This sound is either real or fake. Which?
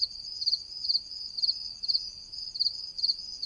real